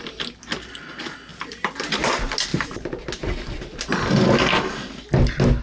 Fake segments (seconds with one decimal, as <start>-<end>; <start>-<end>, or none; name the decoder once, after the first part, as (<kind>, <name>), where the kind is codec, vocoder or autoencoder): none